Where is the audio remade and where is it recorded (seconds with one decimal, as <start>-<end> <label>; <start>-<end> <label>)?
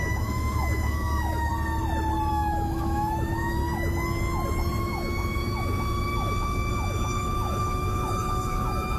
0.0-1.5 remade; 1.5-2.3 recorded; 2.3-3.6 remade; 3.6-4.8 recorded; 4.8-9.0 remade